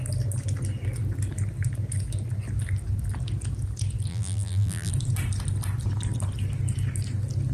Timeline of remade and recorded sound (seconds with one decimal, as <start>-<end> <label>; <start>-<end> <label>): 0.0-4.1 recorded; 4.1-4.9 remade; 4.9-7.5 recorded